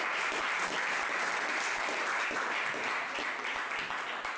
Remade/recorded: recorded